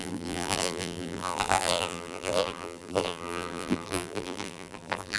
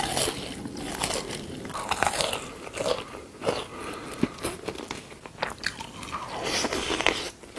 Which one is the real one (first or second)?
second